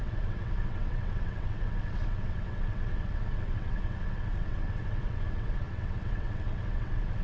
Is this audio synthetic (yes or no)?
yes